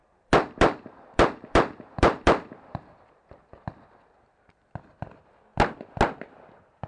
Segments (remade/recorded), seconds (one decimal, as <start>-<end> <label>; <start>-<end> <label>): 0.0-3.1 remade; 3.1-6.9 recorded